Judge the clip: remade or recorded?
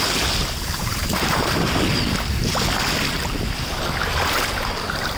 recorded